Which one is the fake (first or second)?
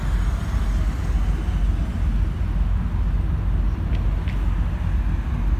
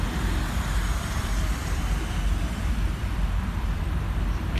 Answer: second